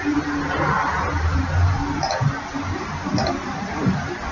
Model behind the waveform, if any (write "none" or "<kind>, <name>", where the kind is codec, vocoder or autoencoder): none